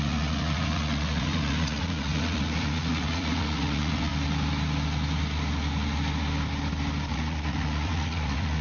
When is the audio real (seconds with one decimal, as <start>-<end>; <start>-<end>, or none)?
4.1-7.1